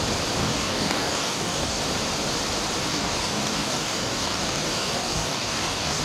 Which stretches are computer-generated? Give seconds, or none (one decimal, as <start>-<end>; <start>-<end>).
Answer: 0.4-1.8; 2.9-6.0